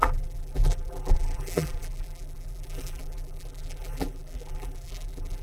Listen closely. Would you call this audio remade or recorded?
remade